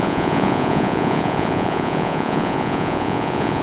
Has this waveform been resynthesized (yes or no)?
yes